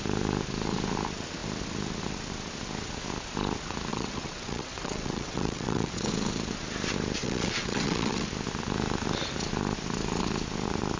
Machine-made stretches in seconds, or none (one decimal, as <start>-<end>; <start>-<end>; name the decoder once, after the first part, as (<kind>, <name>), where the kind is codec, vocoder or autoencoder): 3.9-6.1 (vocoder, WaveNeXt); 7.2-8.3